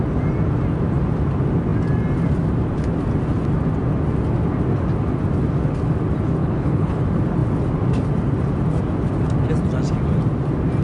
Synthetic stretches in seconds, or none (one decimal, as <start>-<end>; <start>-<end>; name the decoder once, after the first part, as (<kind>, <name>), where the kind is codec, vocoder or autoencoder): 6.4-7.0 (codec, HILCodec)